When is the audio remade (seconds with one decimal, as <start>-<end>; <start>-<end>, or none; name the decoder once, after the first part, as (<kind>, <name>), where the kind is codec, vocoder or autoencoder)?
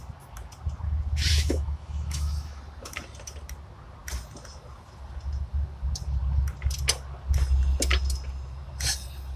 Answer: 1.3-2.6 (autoencoder, DAC-VAE)